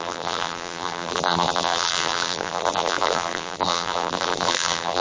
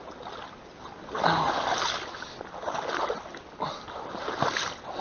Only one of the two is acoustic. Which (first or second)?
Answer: second